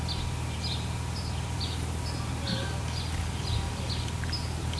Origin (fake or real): real